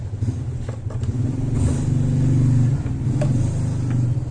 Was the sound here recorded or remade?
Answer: recorded